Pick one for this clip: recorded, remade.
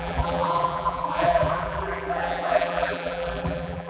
remade